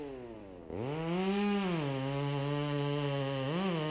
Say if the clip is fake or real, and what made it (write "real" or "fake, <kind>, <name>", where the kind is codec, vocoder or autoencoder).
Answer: real